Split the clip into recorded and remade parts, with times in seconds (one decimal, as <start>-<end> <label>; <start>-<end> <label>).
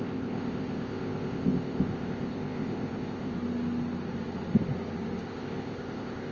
0.0-3.3 remade; 3.3-5.2 recorded; 5.2-6.3 remade